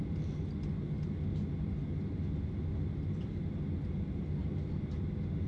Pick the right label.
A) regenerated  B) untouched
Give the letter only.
B